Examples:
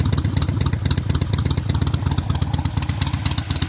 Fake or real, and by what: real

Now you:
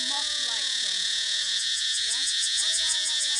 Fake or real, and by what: fake, vocoder, Vocos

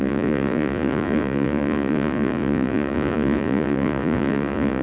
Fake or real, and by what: fake, vocoder, Vocos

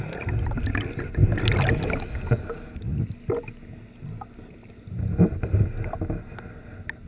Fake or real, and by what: real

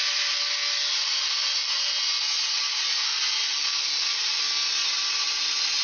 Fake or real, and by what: real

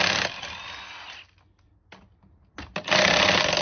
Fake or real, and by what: real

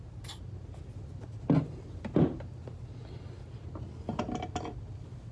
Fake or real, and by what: real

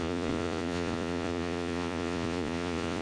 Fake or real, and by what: fake, vocoder, Vocos